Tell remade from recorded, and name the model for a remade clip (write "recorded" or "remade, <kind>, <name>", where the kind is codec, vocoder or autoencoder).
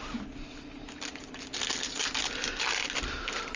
recorded